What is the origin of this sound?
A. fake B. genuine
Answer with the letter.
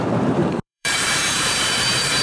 A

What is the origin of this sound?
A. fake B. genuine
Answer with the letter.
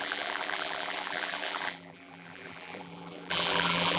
A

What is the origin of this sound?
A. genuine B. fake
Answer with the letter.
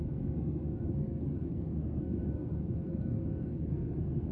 B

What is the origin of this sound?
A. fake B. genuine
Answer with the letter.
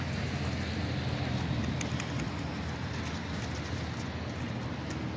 B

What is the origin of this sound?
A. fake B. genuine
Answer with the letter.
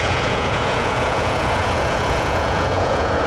A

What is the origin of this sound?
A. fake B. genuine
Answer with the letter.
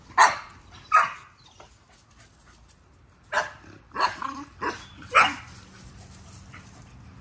B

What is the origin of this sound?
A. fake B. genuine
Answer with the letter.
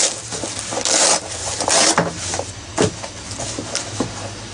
B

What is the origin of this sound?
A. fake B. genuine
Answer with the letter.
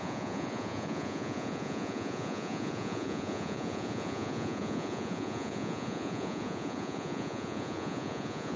A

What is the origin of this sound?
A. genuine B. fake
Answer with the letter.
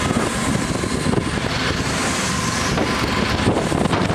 A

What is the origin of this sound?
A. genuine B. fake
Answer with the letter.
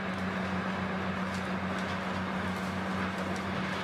A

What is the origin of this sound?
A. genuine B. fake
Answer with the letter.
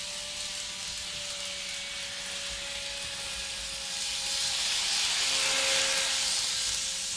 A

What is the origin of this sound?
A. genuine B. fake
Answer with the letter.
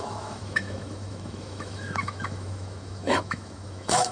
B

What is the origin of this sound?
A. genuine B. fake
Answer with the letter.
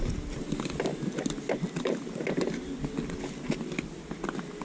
A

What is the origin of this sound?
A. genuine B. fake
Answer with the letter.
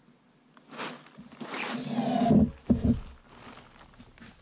A